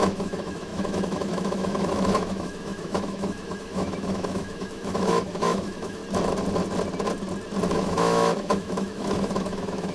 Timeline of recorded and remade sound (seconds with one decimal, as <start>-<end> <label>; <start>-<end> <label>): 0.0-6.0 remade; 6.0-7.7 recorded; 7.7-9.9 remade